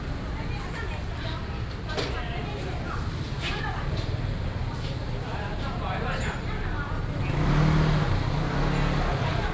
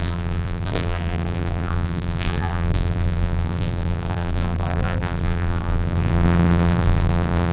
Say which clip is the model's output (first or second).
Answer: second